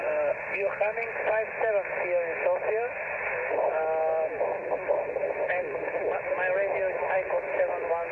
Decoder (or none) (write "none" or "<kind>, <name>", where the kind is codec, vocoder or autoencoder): none